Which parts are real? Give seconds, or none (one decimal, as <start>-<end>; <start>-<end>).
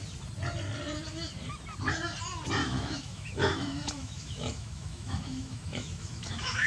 0.0-2.6